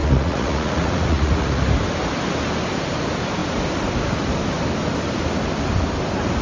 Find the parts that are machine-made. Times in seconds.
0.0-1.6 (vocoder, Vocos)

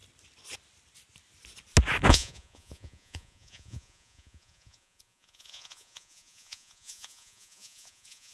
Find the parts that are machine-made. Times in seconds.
2.1-8.3 (vocoder, Vocos)

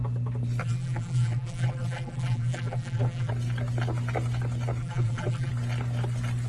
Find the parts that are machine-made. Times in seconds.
0.6-3.3 (vocoder, BigVGAN v2); 4.8-5.5

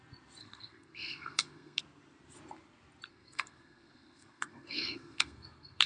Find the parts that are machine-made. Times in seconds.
0.4-1.8 (codec, SNAC); 3.1-5.9

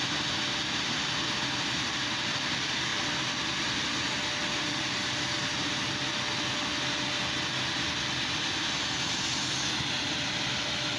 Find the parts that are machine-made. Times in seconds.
none

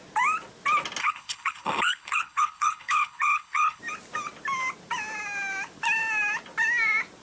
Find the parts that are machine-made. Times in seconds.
1.0-3.8 (codec, HILCodec)

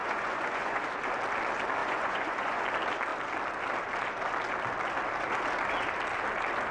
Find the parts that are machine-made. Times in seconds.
0.0-0.8 (vocoder, Vocos); 1.8-2.6